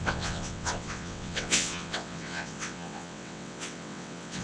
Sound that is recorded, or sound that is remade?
remade